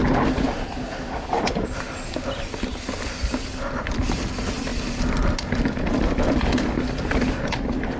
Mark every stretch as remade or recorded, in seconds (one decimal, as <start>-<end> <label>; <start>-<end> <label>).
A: 0.0-8.0 recorded